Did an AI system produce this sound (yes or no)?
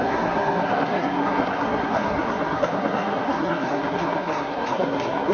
yes